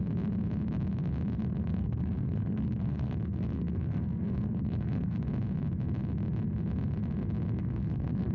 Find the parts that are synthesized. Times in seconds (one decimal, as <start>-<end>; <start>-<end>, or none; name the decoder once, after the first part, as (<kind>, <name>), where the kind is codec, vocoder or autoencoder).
1.5-5.2 (codec, SNAC); 7.6-8.3